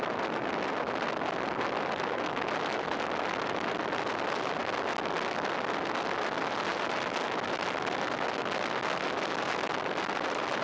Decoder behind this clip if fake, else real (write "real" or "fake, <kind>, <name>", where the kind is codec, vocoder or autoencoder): real